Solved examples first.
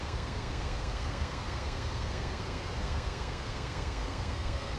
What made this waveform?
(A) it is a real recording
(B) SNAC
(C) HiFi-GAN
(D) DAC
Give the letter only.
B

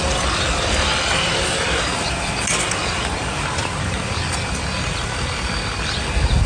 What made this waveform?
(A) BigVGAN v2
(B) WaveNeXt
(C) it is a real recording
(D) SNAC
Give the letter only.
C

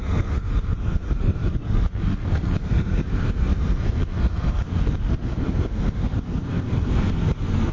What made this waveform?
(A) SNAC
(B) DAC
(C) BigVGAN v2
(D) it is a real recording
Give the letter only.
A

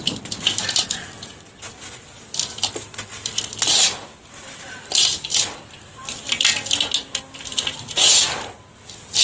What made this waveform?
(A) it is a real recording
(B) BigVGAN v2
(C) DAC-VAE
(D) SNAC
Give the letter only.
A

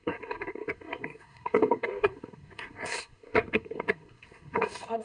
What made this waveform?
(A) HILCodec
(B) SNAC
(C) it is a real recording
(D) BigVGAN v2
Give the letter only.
B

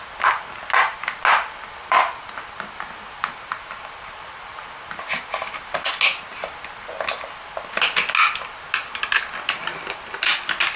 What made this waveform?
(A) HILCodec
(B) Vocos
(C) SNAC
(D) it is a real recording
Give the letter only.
D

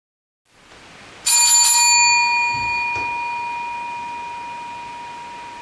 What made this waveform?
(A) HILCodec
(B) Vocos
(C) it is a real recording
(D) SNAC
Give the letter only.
C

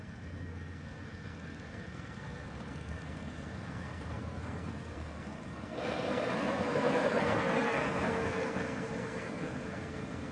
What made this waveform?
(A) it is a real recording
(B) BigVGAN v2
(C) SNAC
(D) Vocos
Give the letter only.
C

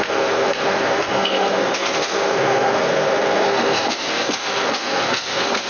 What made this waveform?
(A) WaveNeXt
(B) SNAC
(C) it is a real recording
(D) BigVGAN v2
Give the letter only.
B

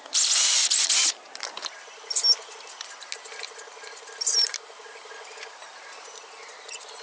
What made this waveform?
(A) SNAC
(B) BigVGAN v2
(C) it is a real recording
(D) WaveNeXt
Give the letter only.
C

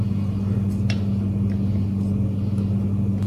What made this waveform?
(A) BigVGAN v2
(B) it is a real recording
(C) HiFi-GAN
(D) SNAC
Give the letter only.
B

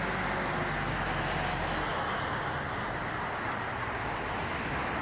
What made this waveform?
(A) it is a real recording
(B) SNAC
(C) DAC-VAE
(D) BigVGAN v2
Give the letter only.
A